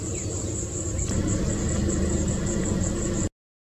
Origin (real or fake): real